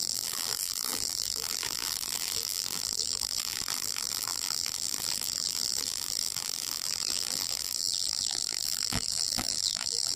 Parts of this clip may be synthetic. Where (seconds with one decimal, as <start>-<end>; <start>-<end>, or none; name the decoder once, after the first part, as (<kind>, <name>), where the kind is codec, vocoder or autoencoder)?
0.0-10.2 (vocoder, BigVGAN v2)